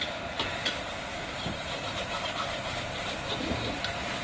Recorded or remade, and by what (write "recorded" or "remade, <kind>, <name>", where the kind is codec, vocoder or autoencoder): recorded